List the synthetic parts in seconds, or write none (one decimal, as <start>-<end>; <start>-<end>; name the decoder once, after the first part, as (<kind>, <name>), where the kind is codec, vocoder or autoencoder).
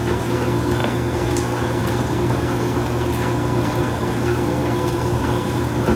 0.0-6.0 (codec, SNAC)